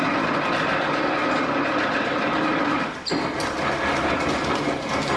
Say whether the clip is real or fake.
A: fake